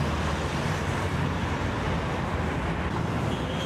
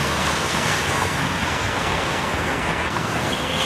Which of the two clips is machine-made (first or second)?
second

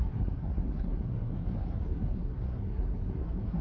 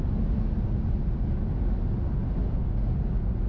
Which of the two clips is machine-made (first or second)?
first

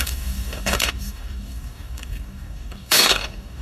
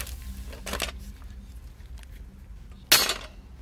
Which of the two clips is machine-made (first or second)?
first